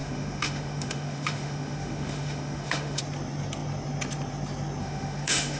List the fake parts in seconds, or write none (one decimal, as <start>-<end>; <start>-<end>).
0.0-3.0; 4.8-5.6